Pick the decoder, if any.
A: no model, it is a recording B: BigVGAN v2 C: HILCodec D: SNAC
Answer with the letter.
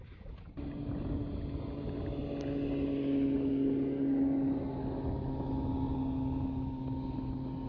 A